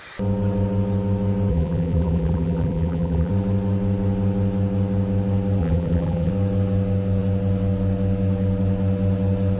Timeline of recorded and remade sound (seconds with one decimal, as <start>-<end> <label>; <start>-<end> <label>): 0.0-1.5 recorded; 1.5-3.3 remade; 3.3-5.6 recorded; 5.6-6.3 remade; 6.3-9.6 recorded